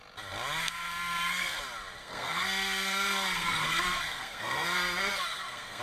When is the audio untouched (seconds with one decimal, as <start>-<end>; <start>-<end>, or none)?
0.0-0.6; 1.6-2.0